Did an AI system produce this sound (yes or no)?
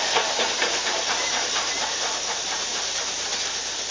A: yes